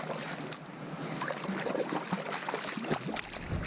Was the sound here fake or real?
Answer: real